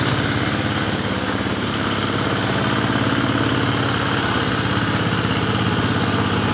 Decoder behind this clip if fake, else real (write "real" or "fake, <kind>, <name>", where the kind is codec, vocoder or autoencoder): real